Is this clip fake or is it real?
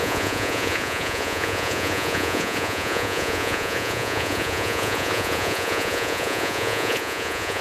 fake